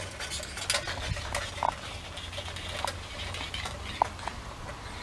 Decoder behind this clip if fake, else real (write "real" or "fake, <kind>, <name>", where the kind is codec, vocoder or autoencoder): real